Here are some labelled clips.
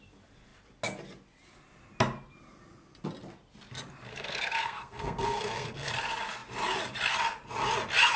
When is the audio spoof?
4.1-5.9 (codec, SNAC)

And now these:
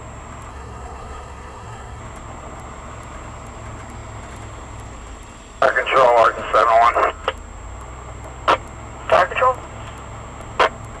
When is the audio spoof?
0.5-2.0 (codec, SNAC)

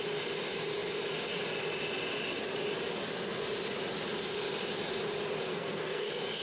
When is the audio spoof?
5.5-6.4 (codec, SNAC)

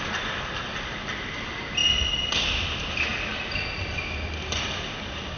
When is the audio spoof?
none